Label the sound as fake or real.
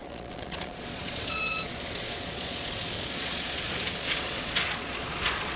fake